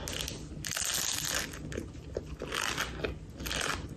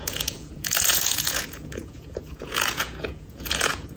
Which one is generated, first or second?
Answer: second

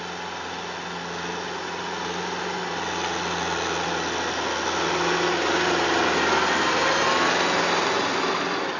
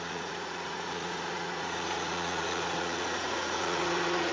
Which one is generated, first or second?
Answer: second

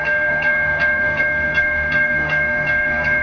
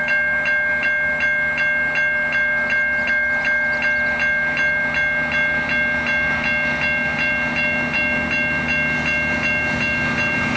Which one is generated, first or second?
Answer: first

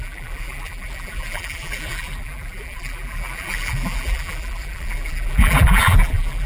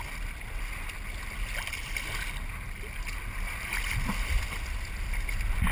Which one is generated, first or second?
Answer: first